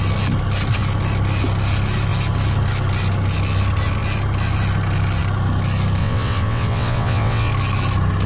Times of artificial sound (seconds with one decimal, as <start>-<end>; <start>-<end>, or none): 6.0-7.5

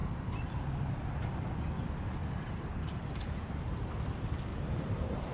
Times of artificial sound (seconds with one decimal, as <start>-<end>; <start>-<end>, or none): 0.0-0.6; 2.2-3.9; 4.5-5.3

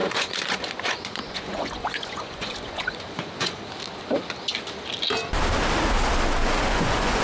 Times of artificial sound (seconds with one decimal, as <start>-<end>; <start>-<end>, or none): 0.0-3.6; 6.4-7.2

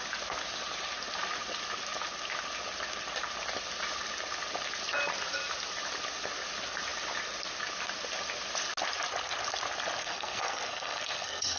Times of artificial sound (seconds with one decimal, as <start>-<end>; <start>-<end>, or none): 10.0-11.6